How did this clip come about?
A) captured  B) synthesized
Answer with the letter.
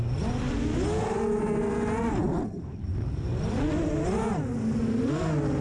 A